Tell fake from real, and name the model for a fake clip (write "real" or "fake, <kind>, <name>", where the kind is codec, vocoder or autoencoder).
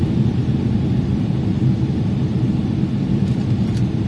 fake, vocoder, BigVGAN v2